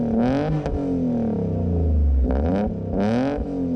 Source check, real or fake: real